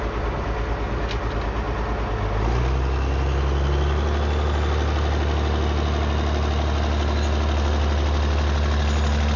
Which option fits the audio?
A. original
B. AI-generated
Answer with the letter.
A